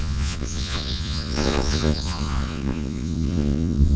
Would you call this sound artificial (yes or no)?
yes